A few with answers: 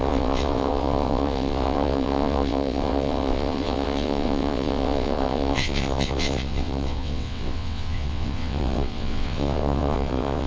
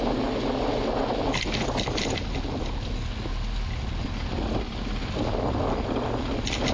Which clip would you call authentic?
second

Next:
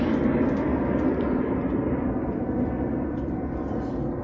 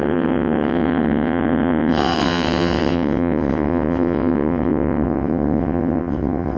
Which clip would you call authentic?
first